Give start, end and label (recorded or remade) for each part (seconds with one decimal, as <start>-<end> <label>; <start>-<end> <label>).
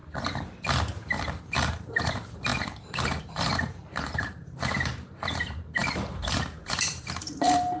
0.0-1.4 recorded; 1.4-2.5 remade; 2.5-3.2 recorded; 3.2-7.8 remade